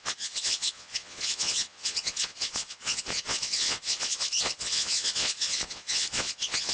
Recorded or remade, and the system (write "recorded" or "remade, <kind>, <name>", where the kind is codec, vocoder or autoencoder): remade, vocoder, Vocos